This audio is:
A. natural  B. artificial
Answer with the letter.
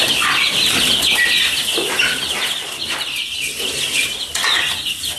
A